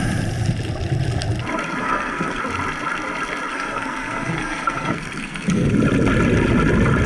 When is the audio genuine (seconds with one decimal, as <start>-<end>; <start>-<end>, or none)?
0.0-1.8; 2.4-3.5; 5.7-7.1